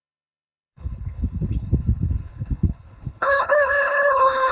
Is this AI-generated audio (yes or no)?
yes